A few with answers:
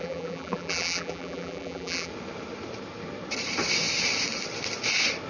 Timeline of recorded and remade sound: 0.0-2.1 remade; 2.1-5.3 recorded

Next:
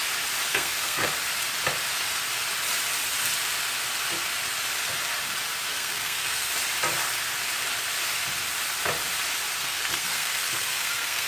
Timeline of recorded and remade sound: 0.0-0.5 recorded; 0.5-1.1 remade; 1.1-5.7 recorded; 5.7-6.5 remade; 6.5-9.6 recorded; 9.6-11.3 remade

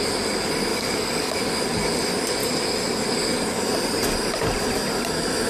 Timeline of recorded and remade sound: 0.0-0.7 recorded; 0.7-1.4 remade; 1.4-5.5 recorded

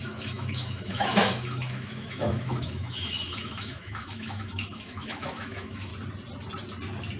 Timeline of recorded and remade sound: 0.0-5.9 remade; 5.9-7.2 recorded

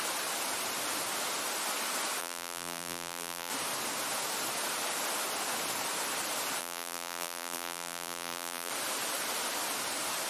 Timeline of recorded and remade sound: 0.0-2.2 recorded; 2.2-3.5 remade; 3.5-6.6 recorded; 6.6-8.7 remade; 8.7-10.3 recorded

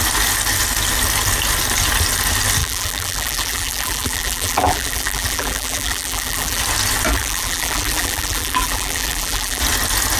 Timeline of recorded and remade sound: 0.0-2.6 recorded; 2.6-6.6 remade; 6.6-7.1 recorded; 7.1-9.6 remade; 9.6-10.2 recorded

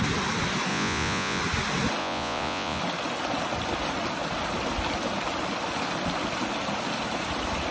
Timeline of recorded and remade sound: 0.0-0.7 recorded; 0.7-1.4 remade; 1.4-2.0 recorded; 2.0-2.8 remade; 2.8-7.7 recorded